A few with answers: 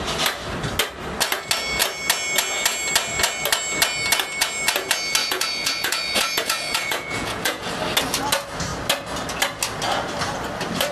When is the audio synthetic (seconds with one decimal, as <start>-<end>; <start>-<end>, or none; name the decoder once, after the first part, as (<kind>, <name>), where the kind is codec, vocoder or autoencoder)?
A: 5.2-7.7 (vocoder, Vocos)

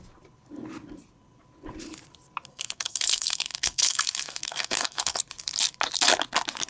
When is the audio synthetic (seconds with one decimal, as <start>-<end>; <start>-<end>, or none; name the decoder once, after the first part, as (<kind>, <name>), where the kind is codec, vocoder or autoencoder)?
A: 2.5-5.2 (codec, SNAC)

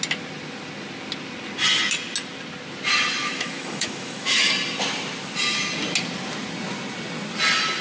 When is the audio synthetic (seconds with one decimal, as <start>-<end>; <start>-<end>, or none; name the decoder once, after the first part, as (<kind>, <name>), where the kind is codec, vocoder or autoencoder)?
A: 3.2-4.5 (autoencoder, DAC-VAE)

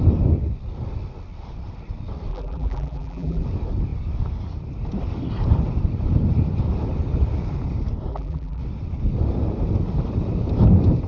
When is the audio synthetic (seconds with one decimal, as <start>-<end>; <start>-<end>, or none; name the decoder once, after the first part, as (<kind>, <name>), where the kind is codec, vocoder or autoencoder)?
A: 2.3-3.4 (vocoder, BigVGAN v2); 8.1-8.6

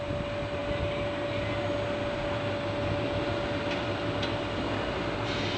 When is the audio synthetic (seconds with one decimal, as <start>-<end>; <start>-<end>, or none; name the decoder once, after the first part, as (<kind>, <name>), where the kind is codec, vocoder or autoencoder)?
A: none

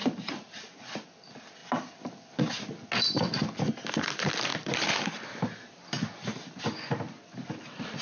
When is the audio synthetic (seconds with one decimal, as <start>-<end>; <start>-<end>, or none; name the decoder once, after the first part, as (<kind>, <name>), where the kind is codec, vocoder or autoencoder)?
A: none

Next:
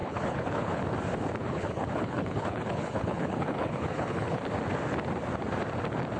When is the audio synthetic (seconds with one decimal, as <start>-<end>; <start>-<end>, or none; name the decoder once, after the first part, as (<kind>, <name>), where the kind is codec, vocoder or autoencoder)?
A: 0.0-0.8 (codec, HILCodec); 1.4-4.4

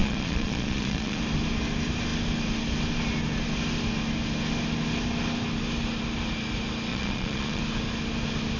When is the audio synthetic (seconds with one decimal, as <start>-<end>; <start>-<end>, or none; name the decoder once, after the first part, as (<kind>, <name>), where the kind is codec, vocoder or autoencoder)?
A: 0.0-1.2 (vocoder, Vocos); 6.9-7.6